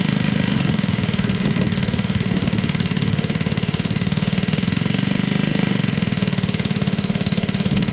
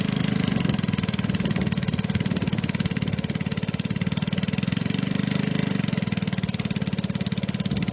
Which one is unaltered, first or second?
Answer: second